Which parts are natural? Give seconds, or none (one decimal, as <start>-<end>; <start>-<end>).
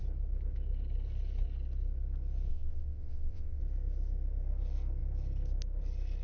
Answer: 0.0-2.5; 3.6-6.2